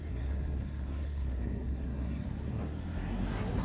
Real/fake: fake